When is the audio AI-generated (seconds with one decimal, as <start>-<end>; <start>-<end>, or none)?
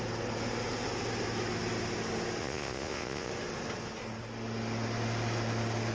2.4-3.3